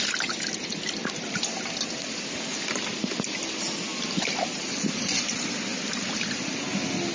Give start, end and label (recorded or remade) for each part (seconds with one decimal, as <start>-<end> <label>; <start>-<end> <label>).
0.0-7.1 recorded